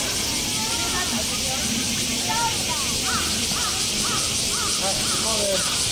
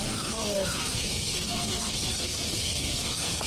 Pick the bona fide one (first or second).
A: first